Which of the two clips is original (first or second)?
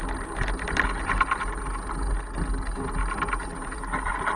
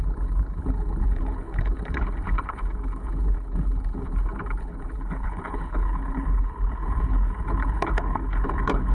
first